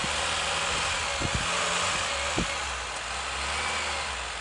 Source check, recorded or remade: recorded